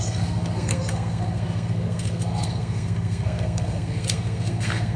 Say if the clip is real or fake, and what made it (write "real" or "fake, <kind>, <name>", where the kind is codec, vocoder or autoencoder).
fake, codec, SNAC